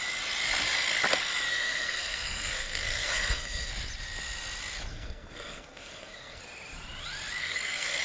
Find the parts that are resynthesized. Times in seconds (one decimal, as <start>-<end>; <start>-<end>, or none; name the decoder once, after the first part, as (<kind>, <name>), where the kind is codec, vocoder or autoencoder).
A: 1.5-3.7 (codec, SNAC); 4.9-6.4; 7.4-8.0